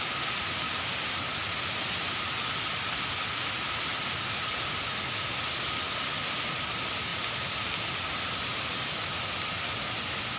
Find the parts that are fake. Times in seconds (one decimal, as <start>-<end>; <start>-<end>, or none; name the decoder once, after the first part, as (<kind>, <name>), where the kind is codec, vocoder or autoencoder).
none